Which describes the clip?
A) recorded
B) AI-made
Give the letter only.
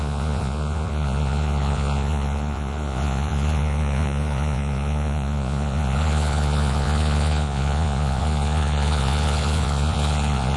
B